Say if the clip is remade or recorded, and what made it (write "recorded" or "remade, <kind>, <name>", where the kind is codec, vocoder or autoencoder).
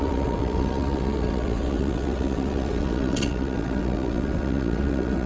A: remade, vocoder, WaveNeXt